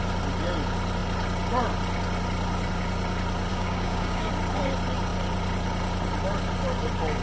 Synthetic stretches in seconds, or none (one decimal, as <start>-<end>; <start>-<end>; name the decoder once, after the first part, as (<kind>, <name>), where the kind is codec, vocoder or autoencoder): 3.5-4.3 (codec, DAC)